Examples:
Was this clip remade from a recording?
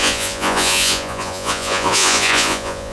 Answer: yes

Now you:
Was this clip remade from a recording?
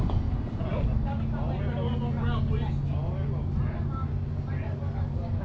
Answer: no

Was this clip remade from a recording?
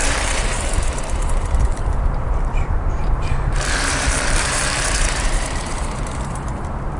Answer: yes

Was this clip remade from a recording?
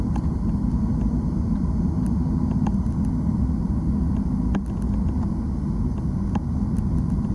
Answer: no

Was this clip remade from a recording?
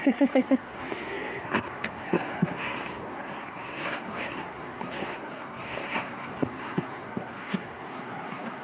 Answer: yes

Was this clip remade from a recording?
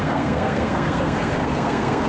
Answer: yes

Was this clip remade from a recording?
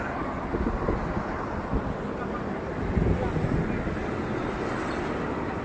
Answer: no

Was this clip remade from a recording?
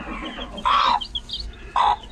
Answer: no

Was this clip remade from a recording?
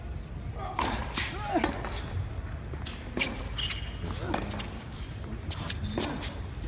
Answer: no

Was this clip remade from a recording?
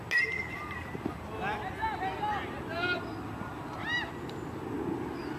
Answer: no